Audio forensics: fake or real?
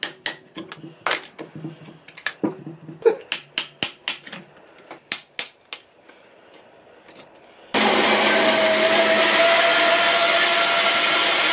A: real